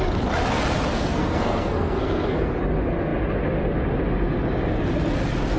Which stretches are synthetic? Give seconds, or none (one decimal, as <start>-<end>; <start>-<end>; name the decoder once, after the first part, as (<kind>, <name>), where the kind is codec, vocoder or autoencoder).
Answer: 0.9-2.5 (codec, SNAC)